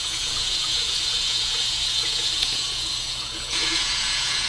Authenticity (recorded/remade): remade